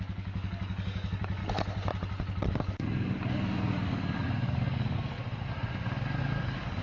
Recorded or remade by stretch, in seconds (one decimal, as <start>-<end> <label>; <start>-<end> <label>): 0.0-1.4 remade; 1.4-2.5 recorded; 2.5-5.2 remade; 5.2-6.2 recorded; 6.2-6.8 remade